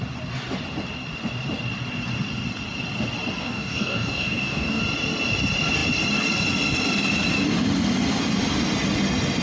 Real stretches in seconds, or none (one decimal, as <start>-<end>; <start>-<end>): 0.0-3.4; 4.8-9.4